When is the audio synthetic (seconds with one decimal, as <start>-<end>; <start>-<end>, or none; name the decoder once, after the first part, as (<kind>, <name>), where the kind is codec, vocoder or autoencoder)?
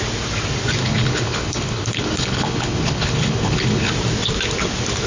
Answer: 0.8-3.9 (codec, HILCodec)